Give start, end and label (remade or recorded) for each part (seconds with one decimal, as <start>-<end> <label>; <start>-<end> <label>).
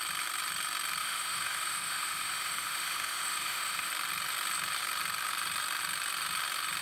0.0-1.0 recorded; 1.0-3.9 remade; 3.9-6.8 recorded